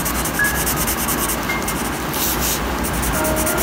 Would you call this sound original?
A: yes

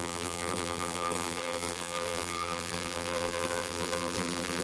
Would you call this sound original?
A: no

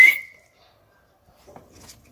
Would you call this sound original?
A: yes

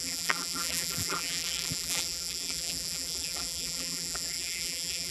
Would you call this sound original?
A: no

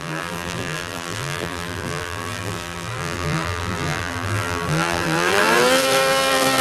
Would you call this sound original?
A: no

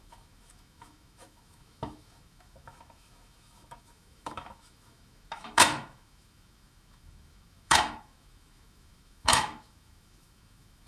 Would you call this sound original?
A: no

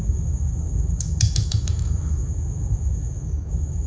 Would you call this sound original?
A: no